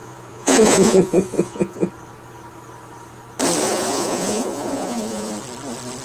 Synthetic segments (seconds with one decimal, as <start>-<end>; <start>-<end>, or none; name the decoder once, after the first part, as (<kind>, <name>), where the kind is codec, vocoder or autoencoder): 0.0-1.9 (vocoder, Vocos); 3.6-5.3